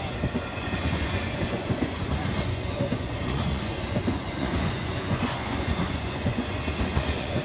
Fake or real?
fake